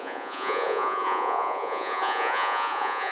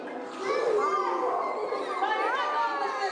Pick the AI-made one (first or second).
first